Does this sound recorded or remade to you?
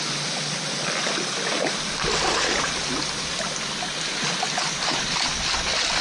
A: recorded